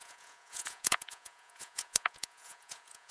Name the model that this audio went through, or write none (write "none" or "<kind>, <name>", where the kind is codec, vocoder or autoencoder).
vocoder, Vocos